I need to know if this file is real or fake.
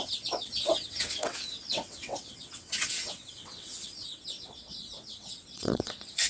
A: fake